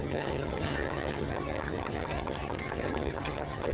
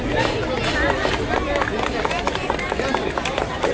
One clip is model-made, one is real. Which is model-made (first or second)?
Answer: first